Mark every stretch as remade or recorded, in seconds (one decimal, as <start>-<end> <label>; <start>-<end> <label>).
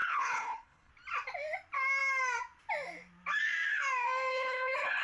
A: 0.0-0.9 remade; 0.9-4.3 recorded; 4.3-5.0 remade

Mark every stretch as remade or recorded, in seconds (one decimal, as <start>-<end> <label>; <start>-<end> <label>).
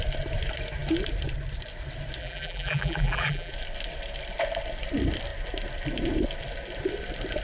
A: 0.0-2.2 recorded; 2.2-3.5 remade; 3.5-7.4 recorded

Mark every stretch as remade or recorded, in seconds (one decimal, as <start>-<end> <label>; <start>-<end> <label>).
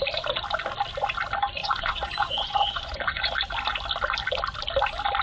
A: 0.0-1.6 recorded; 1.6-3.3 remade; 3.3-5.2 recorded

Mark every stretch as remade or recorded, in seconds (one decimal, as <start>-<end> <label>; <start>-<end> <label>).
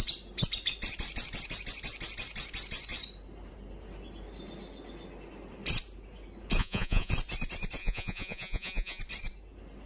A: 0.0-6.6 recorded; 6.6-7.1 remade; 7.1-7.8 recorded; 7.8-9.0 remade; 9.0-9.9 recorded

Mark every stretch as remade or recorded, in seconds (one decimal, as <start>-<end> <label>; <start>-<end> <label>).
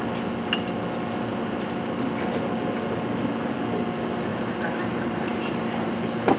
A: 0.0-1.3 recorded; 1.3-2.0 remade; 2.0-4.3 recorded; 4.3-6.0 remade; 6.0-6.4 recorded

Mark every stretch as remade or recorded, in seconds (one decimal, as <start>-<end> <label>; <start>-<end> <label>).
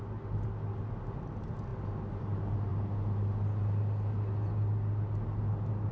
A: 0.0-5.9 recorded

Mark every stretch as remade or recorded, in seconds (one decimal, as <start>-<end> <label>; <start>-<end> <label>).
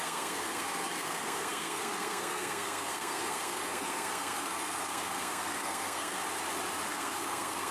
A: 0.0-6.2 remade; 6.2-6.9 recorded; 6.9-7.7 remade